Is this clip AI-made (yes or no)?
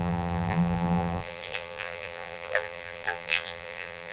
yes